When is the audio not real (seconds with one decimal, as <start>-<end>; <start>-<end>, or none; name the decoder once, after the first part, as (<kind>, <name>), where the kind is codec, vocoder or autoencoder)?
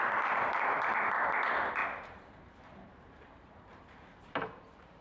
1.8-5.0 (vocoder, BigVGAN v2)